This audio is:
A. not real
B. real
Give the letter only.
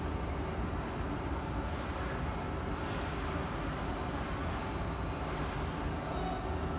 B